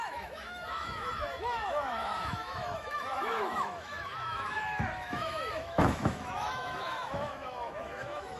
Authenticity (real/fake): fake